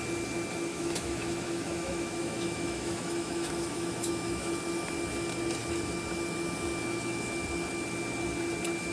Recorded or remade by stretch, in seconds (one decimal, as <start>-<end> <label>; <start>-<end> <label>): 0.0-0.7 recorded; 0.7-4.5 remade; 4.5-8.9 recorded